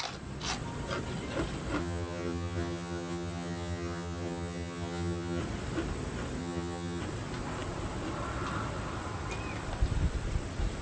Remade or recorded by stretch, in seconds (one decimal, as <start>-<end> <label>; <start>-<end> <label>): 0.0-1.8 recorded; 1.8-5.4 remade; 5.4-6.4 recorded; 6.4-7.0 remade; 7.0-10.8 recorded